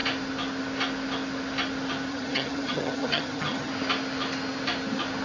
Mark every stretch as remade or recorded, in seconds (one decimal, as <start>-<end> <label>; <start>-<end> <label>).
0.0-2.1 recorded; 2.1-3.7 remade; 3.7-5.2 recorded